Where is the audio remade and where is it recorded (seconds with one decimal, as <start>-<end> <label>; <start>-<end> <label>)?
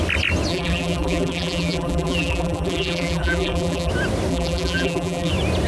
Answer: 0.0-0.5 recorded; 0.5-3.9 remade; 3.9-4.3 recorded; 4.3-5.3 remade; 5.3-5.7 recorded